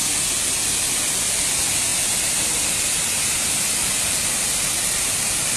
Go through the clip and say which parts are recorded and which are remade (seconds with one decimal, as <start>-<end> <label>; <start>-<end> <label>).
0.0-5.6 recorded